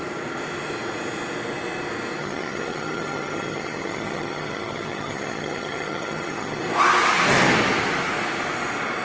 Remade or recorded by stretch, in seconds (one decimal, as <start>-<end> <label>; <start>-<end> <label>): 0.0-2.2 recorded; 2.2-6.6 remade; 6.6-9.0 recorded